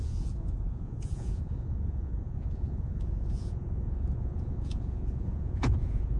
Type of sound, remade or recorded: remade